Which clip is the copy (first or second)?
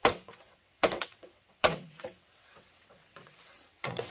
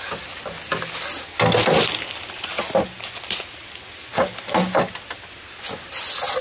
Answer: first